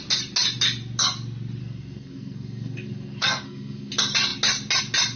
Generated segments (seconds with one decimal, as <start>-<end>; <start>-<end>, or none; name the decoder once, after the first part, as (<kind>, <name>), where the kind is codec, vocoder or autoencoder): 1.6-3.9 (codec, SNAC)